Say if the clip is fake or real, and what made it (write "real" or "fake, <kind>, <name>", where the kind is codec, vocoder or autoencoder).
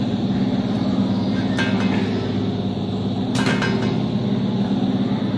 real